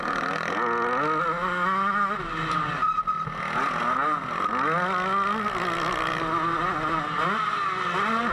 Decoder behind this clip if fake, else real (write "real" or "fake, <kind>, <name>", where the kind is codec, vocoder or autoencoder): real